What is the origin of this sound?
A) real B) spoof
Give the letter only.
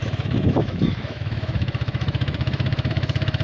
B